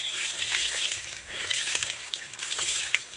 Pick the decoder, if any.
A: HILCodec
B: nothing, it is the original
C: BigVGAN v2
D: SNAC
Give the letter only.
D